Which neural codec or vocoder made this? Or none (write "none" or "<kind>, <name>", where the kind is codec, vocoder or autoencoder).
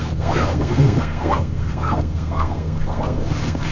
codec, SNAC